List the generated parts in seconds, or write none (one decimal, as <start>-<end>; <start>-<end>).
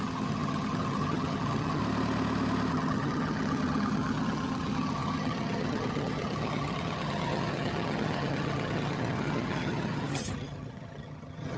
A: 0.0-1.8; 2.7-11.6